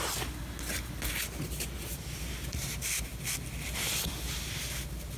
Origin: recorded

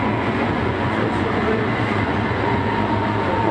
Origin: remade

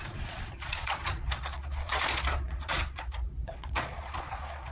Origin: remade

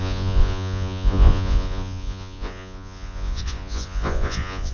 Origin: remade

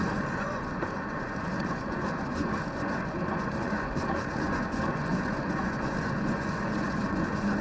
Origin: remade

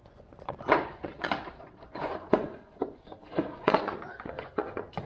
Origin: remade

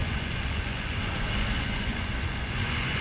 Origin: remade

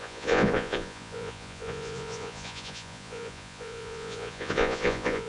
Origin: remade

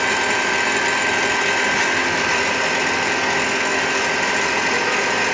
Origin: recorded